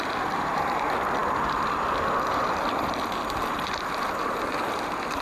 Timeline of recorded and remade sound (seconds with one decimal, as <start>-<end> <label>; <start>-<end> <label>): 0.0-5.2 remade